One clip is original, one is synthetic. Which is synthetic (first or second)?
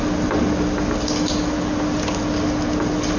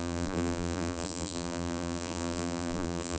second